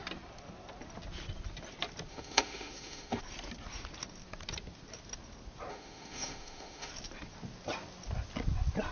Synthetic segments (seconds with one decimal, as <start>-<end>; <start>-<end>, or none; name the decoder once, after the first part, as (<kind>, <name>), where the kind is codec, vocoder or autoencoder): 2.1-3.2 (autoencoder, DAC-VAE); 5.7-6.9